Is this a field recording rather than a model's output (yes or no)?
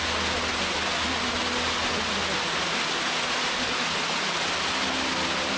yes